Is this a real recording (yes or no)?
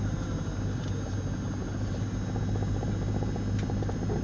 yes